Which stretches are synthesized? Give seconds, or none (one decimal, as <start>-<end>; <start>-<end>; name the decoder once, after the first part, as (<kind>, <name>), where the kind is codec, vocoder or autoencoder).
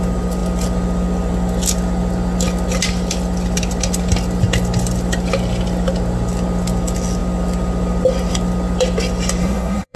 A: 9.4-10.0 (codec, SNAC)